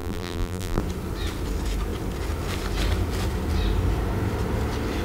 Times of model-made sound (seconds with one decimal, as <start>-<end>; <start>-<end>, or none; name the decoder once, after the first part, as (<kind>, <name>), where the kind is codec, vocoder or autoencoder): 0.0-0.8 (vocoder, BigVGAN v2)